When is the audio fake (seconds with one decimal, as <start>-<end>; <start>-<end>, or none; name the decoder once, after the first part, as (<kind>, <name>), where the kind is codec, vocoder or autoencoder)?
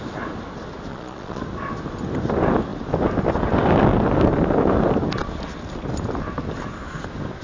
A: 0.9-1.4 (vocoder, Vocos)